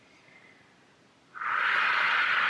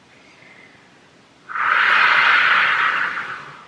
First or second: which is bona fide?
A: first